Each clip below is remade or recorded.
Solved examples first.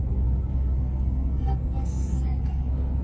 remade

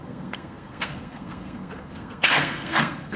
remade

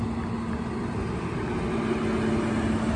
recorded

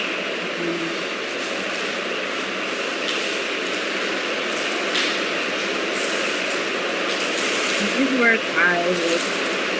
recorded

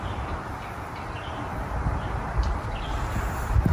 recorded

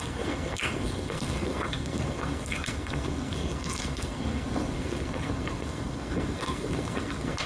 remade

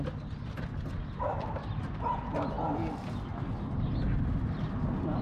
recorded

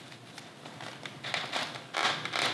recorded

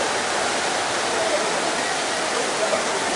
recorded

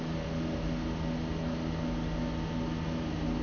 recorded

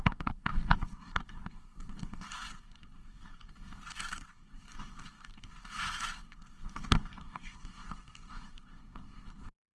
remade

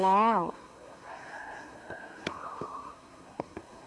remade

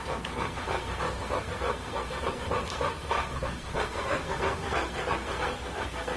remade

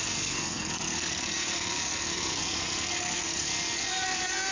remade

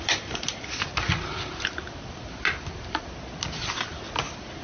recorded